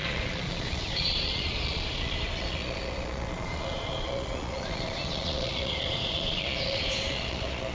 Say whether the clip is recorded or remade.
remade